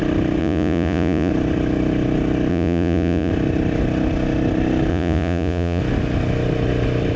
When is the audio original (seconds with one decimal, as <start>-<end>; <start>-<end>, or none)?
0.0-0.4; 1.3-2.5; 3.3-4.9; 5.8-7.2

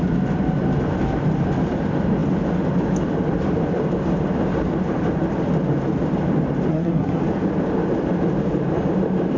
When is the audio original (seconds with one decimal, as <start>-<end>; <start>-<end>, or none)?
0.0-6.7; 7.2-9.4

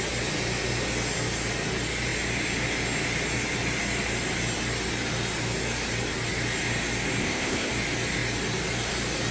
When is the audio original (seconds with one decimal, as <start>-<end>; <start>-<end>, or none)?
0.0-7.2; 7.7-9.3

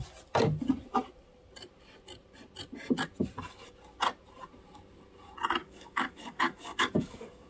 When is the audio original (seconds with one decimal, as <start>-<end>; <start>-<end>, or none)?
0.0-5.6

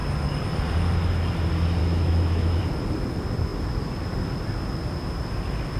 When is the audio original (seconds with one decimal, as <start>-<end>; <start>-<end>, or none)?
0.0-1.8; 2.6-5.8

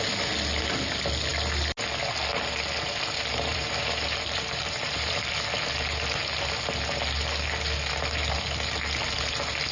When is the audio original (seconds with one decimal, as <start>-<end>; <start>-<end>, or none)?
0.0-3.5; 5.3-9.7

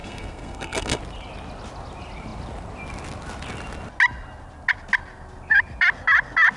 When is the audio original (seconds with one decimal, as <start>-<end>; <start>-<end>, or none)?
1.0-6.6